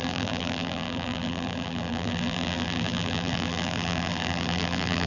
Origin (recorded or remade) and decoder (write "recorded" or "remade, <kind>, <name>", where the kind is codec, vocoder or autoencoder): remade, vocoder, BigVGAN v2